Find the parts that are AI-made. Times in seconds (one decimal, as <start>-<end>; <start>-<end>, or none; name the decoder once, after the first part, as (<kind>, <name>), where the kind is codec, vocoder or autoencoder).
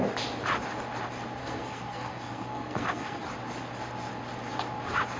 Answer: 1.4-3.2 (codec, SNAC)